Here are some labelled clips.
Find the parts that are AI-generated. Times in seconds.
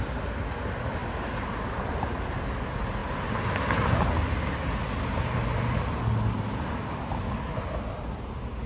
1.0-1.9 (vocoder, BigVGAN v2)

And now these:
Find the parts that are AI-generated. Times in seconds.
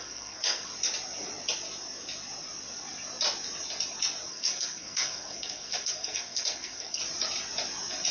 0.0-0.7 (codec, SNAC); 4.3-7.0